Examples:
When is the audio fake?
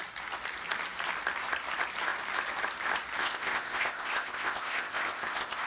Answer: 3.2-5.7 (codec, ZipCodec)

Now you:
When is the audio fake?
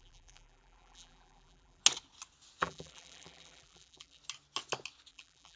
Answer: 0.0-1.8 (vocoder, BigVGAN v2); 2.6-4.2; 5.1-5.6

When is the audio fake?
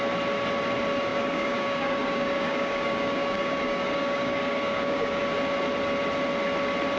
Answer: 1.1-5.2 (codec, DAC)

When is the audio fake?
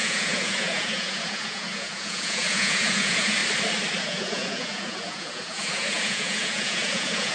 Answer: 0.0-3.4 (vocoder, Vocos); 4.0-7.3